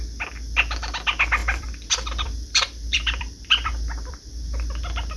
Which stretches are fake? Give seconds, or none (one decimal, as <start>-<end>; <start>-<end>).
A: 1.4-4.3